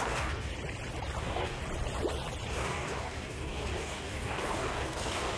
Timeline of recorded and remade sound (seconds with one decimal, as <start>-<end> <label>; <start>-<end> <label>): 0.0-0.5 remade; 0.5-1.2 recorded; 1.2-1.6 remade; 1.6-2.5 recorded; 2.5-5.4 remade